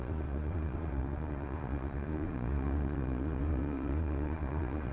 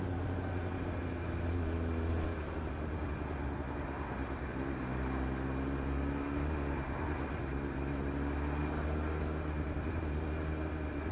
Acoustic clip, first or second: second